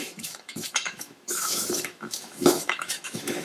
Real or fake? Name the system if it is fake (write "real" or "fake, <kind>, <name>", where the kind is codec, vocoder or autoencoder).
fake, autoencoder, DAC-VAE